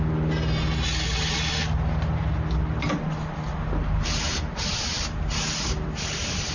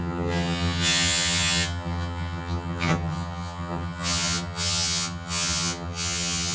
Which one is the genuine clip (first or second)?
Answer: first